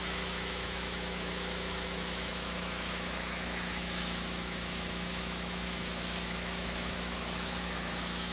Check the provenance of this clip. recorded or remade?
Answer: remade